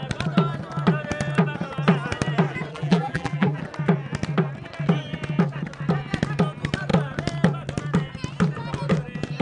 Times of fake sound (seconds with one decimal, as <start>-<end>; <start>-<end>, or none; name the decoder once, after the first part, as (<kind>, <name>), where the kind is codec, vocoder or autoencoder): 2.7-3.6 (vocoder, BigVGAN v2)

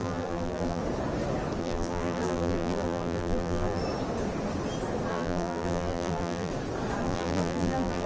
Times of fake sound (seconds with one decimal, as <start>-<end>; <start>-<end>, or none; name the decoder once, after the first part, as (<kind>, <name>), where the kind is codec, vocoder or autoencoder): 0.0-0.8 (vocoder, BigVGAN v2); 1.6-3.8; 5.1-6.5; 7.0-8.1

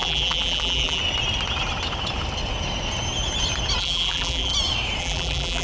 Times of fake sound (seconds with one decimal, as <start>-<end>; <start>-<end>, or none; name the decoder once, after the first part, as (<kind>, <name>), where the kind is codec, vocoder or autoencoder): 0.0-1.0 (vocoder, BigVGAN v2); 3.8-4.5; 5.0-5.6

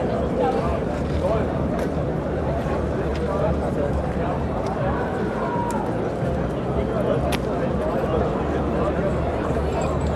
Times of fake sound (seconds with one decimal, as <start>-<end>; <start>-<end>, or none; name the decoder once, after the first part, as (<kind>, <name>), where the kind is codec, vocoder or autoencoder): 0.0-3.1 (vocoder, BigVGAN v2); 3.9-5.6; 9.3-10.2

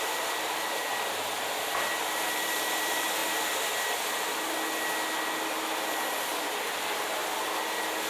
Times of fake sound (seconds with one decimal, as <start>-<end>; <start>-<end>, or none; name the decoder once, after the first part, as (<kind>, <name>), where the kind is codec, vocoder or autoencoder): 0.0-0.9 (vocoder, BigVGAN v2); 2.0-3.2; 6.8-7.2